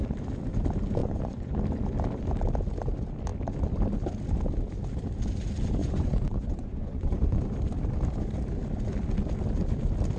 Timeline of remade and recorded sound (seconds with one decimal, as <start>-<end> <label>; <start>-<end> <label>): 0.0-1.0 recorded; 1.0-1.6 remade; 1.6-5.8 recorded; 5.8-7.4 remade; 7.4-10.2 recorded